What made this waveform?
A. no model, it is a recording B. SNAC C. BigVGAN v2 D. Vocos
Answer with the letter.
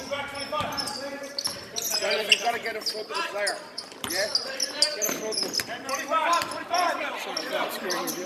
C